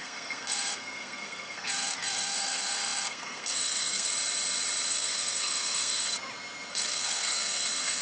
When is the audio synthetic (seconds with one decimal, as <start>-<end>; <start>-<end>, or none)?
0.0-4.1; 4.9-6.1; 6.7-8.0